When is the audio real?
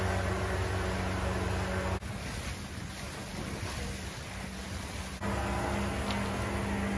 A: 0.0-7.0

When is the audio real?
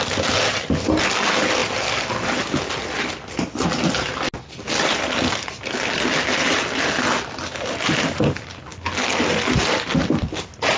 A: 0.0-10.8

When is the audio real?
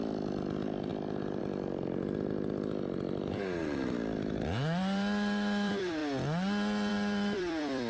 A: 6.0-6.9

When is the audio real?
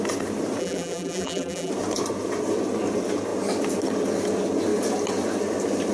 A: 0.0-0.6; 1.7-5.9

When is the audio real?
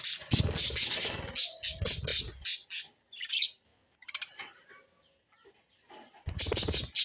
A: 0.0-7.0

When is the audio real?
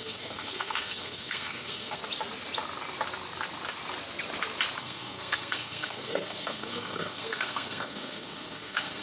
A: 2.0-4.8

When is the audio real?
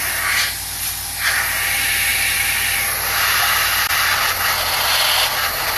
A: 0.0-2.1; 3.4-5.8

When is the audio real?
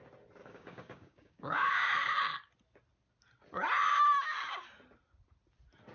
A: 0.0-0.4; 1.9-5.9